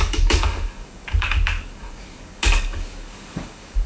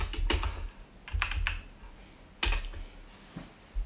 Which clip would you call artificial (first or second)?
first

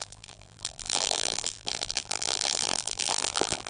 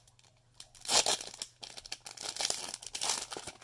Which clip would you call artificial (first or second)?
first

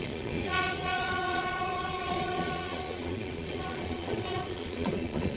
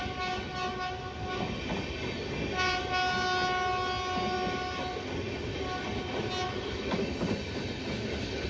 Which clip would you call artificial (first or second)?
first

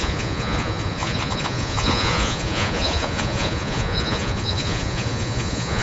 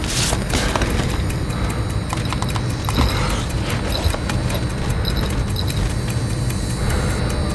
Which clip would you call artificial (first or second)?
first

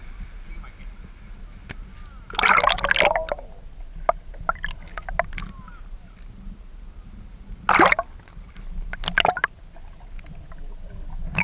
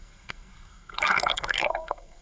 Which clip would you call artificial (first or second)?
second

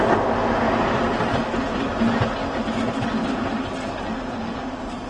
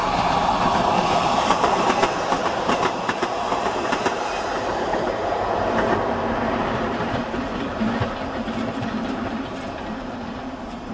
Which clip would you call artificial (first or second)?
second